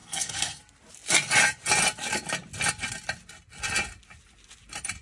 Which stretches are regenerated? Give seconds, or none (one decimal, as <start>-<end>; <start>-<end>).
0.0-0.6